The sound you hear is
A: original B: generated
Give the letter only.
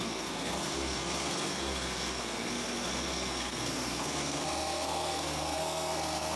B